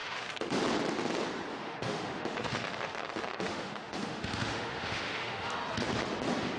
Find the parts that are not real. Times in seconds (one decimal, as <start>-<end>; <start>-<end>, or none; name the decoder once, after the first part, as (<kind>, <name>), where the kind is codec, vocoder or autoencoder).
0.0-0.6 (autoencoder, DAC-VAE); 1.5-5.5